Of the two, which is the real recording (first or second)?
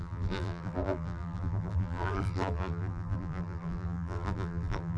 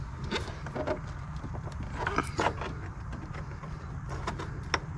second